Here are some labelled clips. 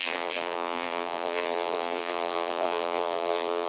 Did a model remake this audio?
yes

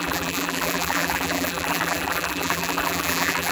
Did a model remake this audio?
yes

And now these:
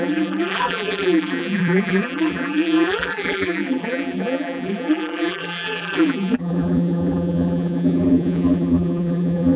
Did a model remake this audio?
yes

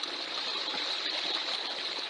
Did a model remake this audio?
yes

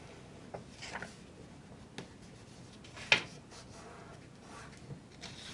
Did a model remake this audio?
no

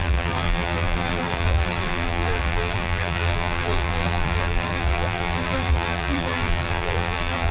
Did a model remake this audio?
yes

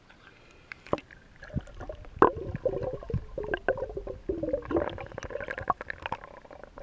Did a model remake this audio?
no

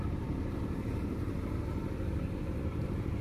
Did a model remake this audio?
yes